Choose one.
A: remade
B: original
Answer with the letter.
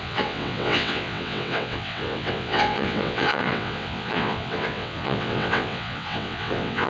A